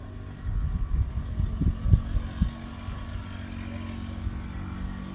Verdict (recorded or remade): recorded